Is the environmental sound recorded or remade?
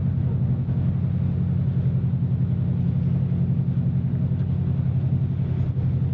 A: recorded